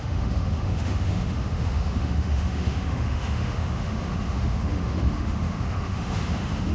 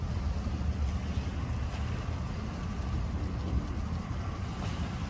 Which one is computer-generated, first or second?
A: first